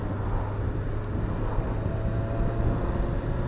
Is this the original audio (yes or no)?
yes